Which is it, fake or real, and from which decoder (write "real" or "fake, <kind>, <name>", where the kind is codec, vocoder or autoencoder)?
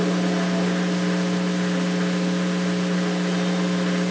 real